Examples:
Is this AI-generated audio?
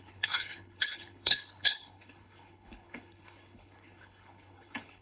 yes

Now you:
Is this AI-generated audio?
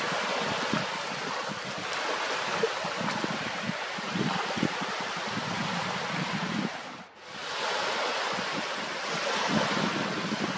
no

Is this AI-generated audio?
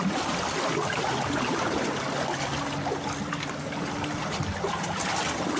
no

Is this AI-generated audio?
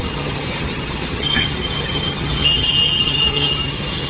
yes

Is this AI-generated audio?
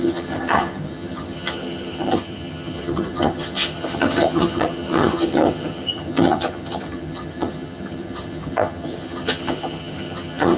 yes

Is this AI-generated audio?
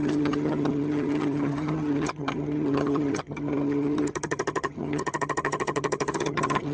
yes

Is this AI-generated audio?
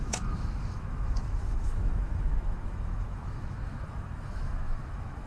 yes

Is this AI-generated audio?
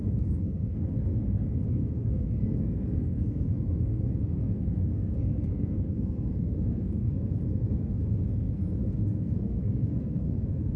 yes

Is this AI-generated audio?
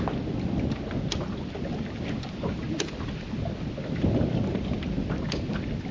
no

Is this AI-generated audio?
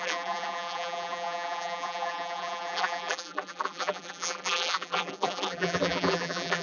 yes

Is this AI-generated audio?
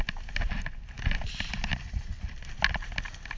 no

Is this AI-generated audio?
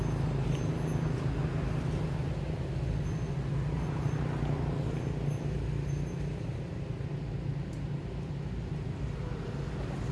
no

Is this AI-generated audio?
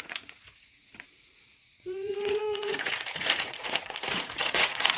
yes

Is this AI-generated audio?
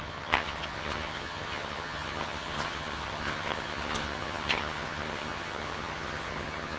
yes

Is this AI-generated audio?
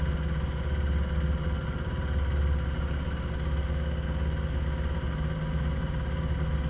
no